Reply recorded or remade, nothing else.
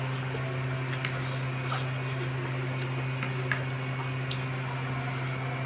recorded